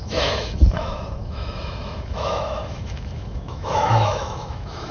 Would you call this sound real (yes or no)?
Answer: no